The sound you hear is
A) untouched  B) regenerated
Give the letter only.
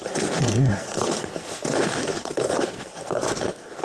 B